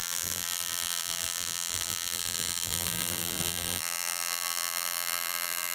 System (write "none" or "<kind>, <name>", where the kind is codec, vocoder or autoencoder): vocoder, BigVGAN v2